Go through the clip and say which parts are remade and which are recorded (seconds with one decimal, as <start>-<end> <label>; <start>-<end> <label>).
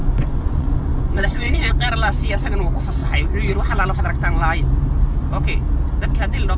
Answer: 0.0-1.7 remade; 1.7-6.6 recorded